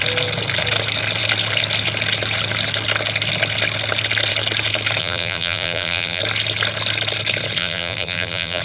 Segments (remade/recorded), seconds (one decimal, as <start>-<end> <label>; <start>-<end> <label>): 0.0-5.0 recorded; 5.0-6.2 remade; 6.2-7.6 recorded; 7.6-8.6 remade